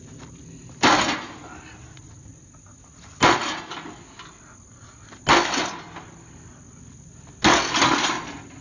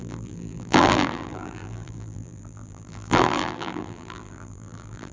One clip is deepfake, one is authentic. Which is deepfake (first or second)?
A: second